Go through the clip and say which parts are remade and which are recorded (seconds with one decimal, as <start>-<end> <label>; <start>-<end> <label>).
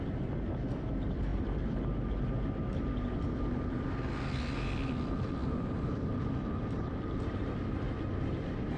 0.0-5.4 recorded; 5.4-6.1 remade; 6.1-8.8 recorded